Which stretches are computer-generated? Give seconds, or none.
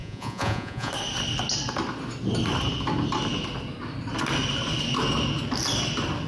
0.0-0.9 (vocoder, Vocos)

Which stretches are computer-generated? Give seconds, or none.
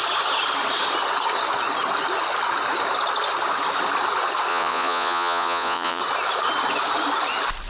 4.5-6.0 (vocoder, Vocos)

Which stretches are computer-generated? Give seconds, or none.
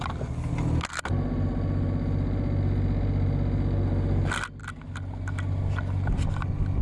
none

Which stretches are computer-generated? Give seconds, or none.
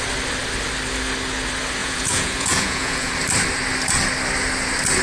1.8-3.1 (vocoder, Vocos)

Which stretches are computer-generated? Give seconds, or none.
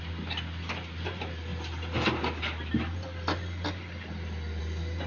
none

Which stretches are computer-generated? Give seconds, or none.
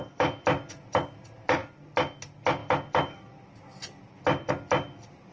none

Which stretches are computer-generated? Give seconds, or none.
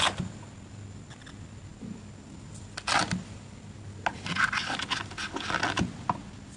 none